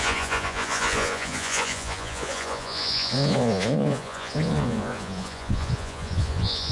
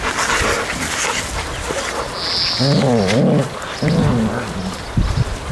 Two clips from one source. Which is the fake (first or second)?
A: first